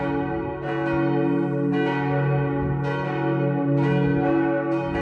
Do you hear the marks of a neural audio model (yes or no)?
no